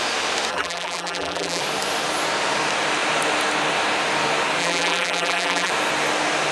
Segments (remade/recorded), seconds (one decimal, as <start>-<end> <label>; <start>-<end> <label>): 0.0-0.5 recorded; 0.5-1.6 remade; 1.6-4.6 recorded; 4.6-5.7 remade; 5.7-6.5 recorded